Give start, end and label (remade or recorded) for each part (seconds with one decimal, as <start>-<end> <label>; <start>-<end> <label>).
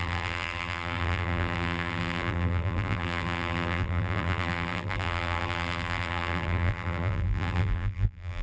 0.0-8.4 remade